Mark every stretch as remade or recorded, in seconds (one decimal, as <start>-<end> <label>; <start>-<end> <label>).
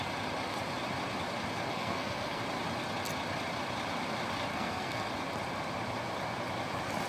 0.0-1.7 recorded; 1.7-2.4 remade; 2.4-4.5 recorded; 4.5-5.1 remade; 5.1-7.1 recorded